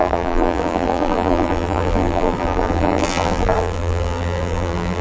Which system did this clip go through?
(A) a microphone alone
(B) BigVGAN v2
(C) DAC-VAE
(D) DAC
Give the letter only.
B